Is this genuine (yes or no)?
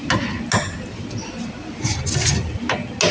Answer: yes